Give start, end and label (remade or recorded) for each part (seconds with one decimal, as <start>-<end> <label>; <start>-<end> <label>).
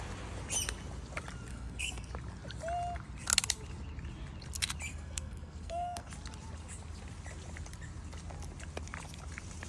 0.0-1.5 recorded; 1.5-2.1 remade; 2.1-4.9 recorded; 4.9-6.1 remade; 6.1-9.7 recorded